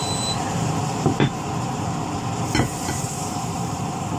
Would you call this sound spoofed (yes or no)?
yes